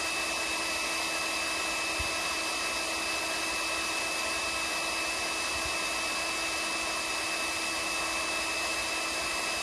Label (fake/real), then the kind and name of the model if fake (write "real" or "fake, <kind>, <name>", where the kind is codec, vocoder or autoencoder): real